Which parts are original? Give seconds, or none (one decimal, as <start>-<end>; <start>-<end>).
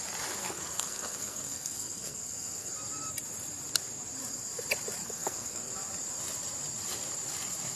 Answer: 0.0-0.4; 2.7-5.0; 5.7-7.8